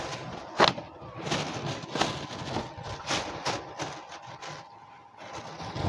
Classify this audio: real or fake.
real